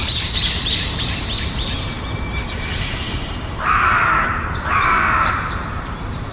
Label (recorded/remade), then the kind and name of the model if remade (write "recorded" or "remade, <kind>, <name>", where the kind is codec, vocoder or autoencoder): remade, vocoder, BigVGAN v2